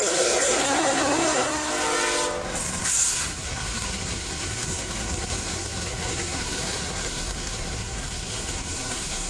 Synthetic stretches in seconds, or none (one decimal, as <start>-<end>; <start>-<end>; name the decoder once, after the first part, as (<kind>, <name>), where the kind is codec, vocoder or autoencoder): 0.0-1.7 (codec, SNAC); 2.8-9.3